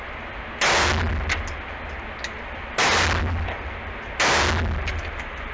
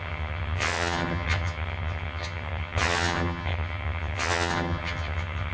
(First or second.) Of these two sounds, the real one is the first